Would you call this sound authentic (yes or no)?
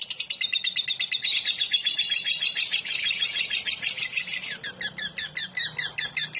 yes